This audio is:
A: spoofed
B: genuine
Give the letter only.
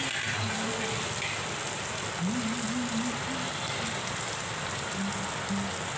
B